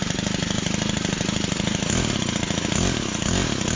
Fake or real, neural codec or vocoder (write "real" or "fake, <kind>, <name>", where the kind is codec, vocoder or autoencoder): real